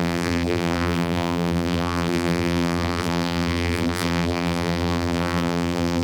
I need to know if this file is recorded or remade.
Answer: remade